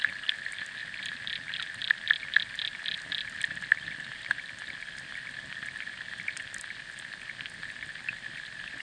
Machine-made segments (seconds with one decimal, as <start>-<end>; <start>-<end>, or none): none